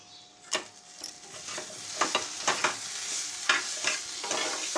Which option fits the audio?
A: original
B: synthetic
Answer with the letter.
A